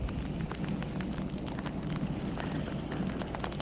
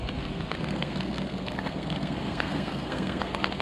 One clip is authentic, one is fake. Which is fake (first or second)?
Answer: second